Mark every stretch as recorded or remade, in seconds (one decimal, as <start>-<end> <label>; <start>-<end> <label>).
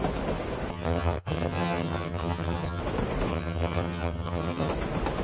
0.0-0.7 recorded; 0.7-2.8 remade; 2.8-3.3 recorded; 3.3-4.7 remade; 4.7-5.2 recorded